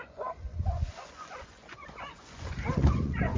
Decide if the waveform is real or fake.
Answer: fake